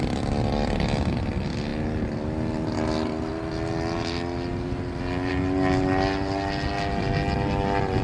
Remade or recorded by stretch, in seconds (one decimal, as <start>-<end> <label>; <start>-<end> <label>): 0.0-8.0 recorded